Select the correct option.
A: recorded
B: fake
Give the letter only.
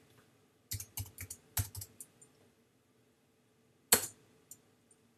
A